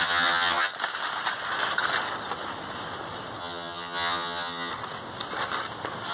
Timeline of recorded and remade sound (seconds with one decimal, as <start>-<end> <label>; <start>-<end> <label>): 0.0-0.7 remade; 0.7-3.4 recorded; 3.4-4.7 remade; 4.7-6.1 recorded